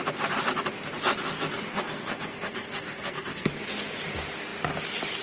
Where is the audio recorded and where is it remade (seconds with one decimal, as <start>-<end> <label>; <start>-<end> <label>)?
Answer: 0.0-1.7 recorded; 1.7-3.5 remade; 3.5-5.2 recorded